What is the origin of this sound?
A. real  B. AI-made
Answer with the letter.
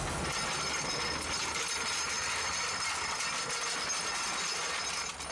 A